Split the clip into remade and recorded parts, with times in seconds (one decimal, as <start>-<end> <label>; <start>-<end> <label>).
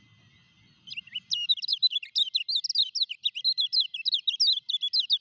0.0-5.2 recorded